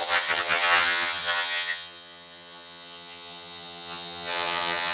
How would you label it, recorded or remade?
remade